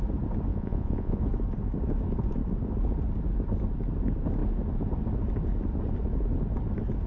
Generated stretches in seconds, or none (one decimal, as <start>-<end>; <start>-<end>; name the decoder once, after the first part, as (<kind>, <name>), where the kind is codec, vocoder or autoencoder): 0.5-1.2 (vocoder, Vocos)